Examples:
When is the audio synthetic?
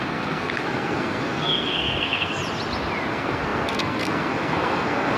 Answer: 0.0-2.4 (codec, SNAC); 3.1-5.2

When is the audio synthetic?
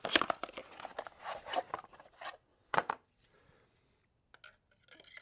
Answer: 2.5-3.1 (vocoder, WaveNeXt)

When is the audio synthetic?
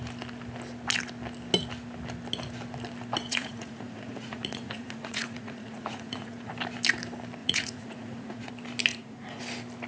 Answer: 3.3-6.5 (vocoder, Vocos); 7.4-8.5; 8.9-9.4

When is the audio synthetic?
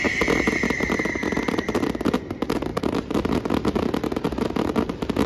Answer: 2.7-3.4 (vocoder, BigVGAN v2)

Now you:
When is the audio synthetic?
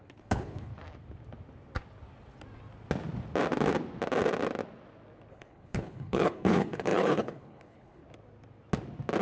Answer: 0.0-0.7 (codec, HILCodec); 5.3-8.0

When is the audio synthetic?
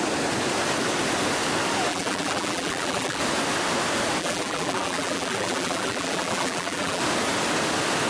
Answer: 1.9-3.2 (vocoder, BigVGAN v2); 4.2-7.0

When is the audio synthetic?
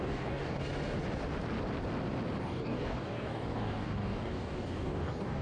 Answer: 0.0-0.6 (codec, DAC); 2.4-5.4